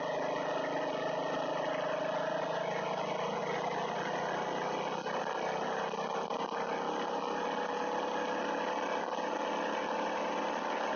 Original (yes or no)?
yes